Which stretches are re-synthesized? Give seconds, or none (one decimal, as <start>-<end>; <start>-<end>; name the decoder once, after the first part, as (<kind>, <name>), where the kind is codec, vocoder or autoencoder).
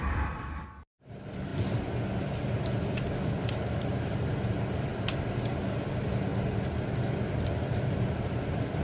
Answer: 0.0-1.5 (vocoder, BigVGAN v2); 2.8-4.9; 5.5-6.3; 7.0-8.8